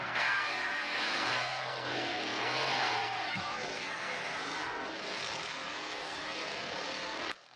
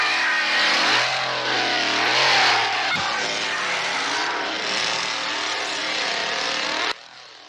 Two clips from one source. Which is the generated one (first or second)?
first